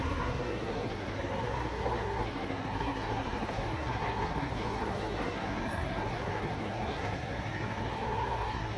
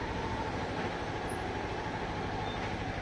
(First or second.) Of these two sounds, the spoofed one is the first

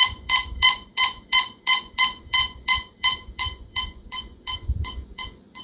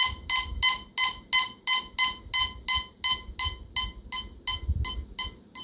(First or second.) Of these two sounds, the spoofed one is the first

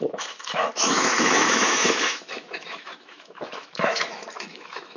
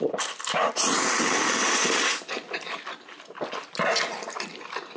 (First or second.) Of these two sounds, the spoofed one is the first